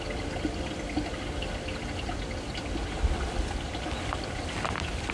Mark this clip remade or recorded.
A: recorded